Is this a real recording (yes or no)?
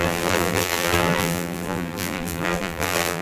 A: no